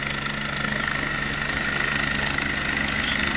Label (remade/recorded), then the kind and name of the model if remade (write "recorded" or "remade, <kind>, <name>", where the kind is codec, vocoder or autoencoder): recorded